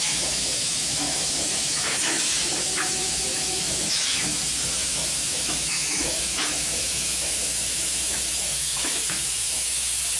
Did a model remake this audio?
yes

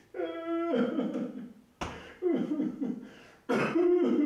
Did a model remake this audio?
no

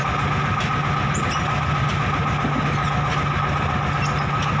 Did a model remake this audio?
no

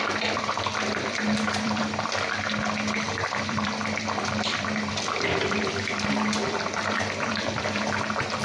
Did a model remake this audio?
yes